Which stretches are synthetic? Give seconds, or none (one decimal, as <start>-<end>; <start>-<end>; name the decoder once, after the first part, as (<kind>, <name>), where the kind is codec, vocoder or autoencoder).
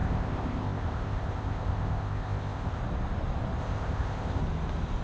0.0-2.8 (codec, ZipCodec); 3.6-4.4